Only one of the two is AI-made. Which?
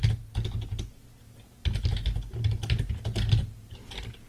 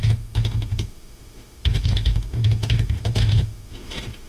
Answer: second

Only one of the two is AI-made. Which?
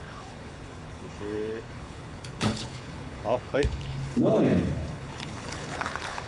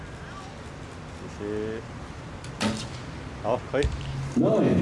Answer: first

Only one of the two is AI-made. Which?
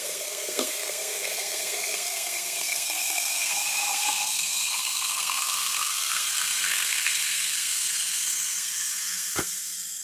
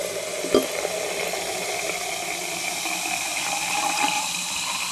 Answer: first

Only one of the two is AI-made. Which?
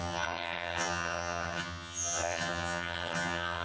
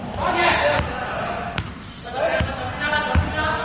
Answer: first